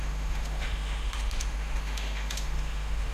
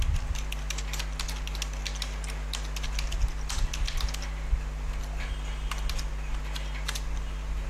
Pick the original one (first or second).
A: second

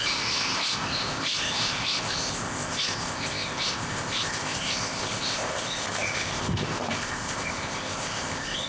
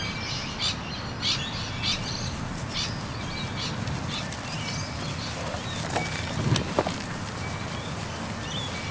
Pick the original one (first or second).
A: second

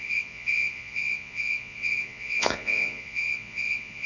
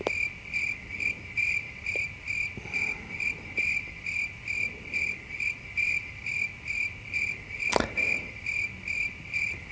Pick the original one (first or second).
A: second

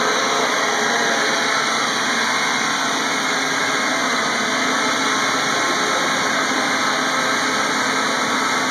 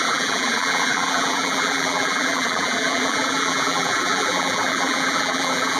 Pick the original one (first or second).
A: first